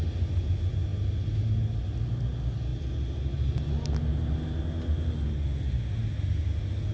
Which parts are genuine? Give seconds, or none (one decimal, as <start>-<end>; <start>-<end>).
0.0-6.9